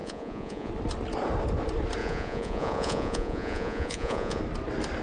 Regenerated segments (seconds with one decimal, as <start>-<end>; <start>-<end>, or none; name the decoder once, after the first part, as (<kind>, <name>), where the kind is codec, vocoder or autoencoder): 0.0-0.7 (vocoder, Vocos); 2.0-4.4